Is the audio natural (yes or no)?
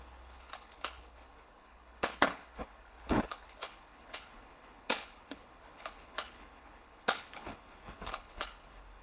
no